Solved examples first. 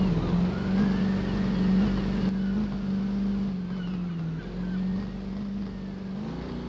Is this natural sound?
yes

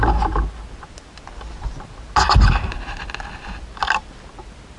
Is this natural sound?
yes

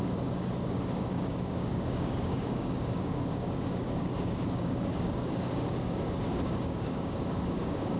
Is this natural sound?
no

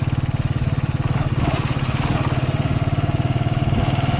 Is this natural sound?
yes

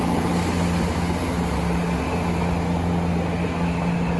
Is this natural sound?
yes